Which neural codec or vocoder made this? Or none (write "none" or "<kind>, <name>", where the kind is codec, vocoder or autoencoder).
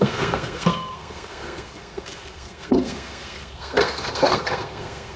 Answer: codec, SNAC